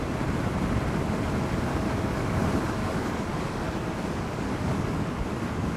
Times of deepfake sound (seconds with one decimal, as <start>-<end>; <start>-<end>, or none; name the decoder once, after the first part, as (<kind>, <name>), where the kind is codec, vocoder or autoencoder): 1.7-2.4 (codec, DAC); 2.8-5.8

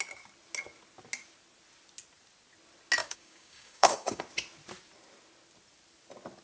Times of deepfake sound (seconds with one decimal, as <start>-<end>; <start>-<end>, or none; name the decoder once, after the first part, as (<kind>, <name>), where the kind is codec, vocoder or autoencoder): 3.0-4.2 (codec, DAC)

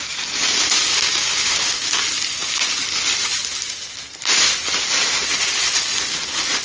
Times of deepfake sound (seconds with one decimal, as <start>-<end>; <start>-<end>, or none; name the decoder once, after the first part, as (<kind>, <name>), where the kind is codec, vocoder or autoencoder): 0.9-1.9 (codec, DAC)

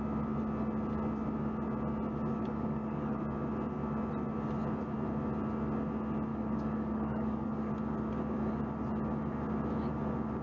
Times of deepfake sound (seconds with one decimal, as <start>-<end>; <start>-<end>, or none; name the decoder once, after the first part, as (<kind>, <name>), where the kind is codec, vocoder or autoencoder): 2.3-3.2 (codec, DAC); 6.3-7.7